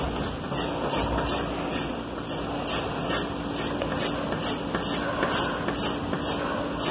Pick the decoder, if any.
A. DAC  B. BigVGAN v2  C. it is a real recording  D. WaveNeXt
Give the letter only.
C